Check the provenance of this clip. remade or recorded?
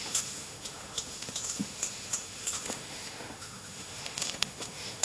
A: remade